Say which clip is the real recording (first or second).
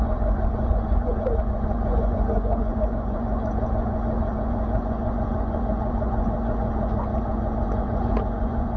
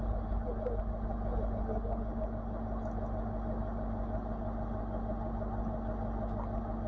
second